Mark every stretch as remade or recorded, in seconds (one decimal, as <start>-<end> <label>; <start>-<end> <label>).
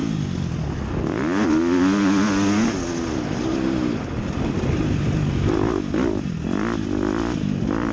0.0-7.9 recorded